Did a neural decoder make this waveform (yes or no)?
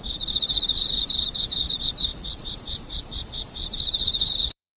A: yes